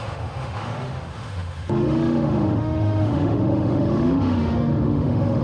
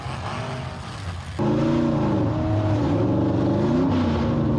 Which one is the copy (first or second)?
first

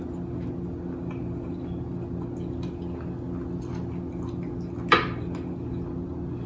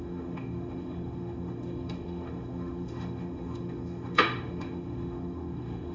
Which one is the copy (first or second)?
second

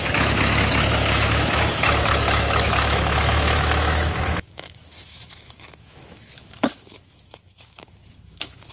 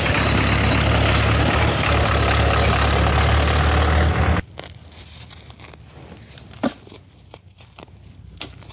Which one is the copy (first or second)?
first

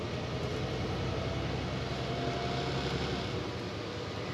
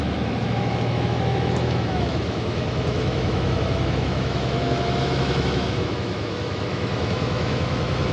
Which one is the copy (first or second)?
second